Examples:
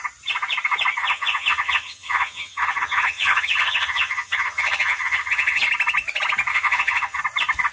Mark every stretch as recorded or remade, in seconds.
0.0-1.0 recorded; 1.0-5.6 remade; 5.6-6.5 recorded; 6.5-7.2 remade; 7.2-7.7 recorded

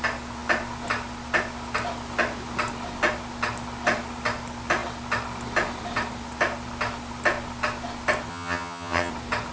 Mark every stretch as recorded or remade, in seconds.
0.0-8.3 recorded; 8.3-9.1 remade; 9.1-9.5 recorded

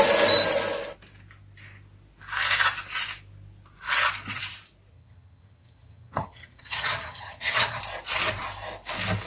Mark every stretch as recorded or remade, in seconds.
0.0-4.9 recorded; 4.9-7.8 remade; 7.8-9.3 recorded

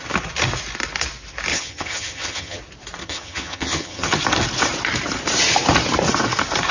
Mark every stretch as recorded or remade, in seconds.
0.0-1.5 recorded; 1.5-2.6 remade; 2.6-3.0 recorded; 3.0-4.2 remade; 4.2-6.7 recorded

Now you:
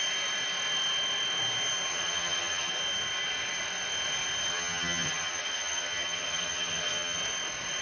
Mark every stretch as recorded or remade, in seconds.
0.0-1.9 recorded; 1.9-2.7 remade; 2.7-4.5 recorded; 4.5-7.2 remade; 7.2-7.8 recorded

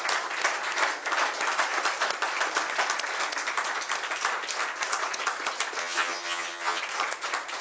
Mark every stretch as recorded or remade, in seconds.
0.0-5.8 recorded; 5.8-6.8 remade; 6.8-7.6 recorded